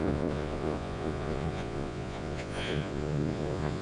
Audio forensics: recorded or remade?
remade